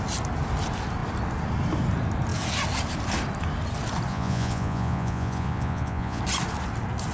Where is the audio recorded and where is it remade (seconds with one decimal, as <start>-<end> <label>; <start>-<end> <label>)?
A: 0.0-4.1 recorded; 4.1-6.2 remade; 6.2-7.1 recorded